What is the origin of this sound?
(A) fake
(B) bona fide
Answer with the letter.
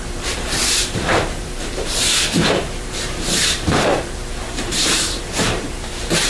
A